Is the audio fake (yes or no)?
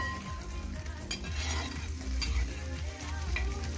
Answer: no